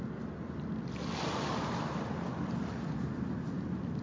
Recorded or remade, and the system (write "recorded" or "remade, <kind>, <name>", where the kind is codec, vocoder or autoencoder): recorded